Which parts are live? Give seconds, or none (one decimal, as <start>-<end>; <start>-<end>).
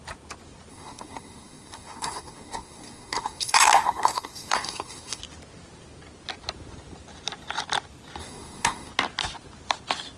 0.0-0.7; 5.2-8.2; 8.9-10.2